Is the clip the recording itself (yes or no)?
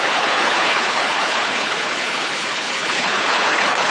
no